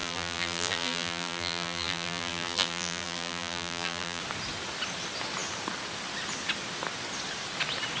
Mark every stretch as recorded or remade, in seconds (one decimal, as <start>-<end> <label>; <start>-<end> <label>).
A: 0.0-4.2 remade; 4.2-8.0 recorded